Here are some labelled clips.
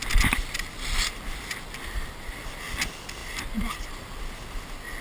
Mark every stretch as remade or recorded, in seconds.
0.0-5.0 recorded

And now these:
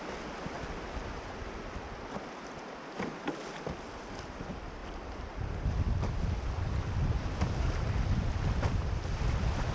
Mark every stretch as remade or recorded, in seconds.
0.0-9.7 recorded

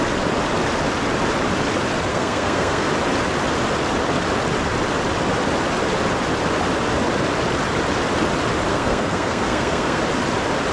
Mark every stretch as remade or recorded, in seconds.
0.0-2.1 recorded; 2.1-2.9 remade; 2.9-8.7 recorded; 8.7-10.0 remade; 10.0-10.7 recorded

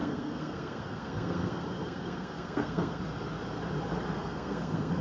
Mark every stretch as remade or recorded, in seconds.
0.0-3.0 remade; 3.0-4.1 recorded; 4.1-5.0 remade

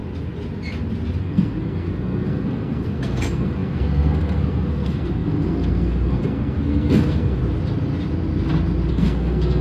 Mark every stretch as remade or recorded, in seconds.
0.0-1.2 recorded; 1.2-7.4 remade; 7.4-8.9 recorded; 8.9-9.6 remade

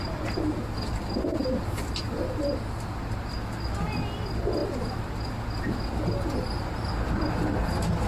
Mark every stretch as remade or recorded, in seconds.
0.0-8.1 recorded

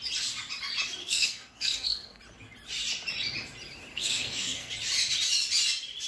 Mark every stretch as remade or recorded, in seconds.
0.0-1.0 recorded; 1.0-2.2 remade; 2.2-3.9 recorded; 3.9-4.7 remade; 4.7-6.1 recorded